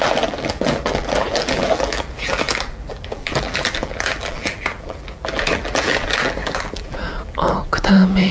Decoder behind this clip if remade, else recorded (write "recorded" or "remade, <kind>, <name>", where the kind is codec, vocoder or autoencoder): remade, vocoder, BigVGAN v2